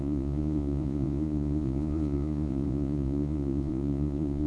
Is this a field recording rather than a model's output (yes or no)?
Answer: no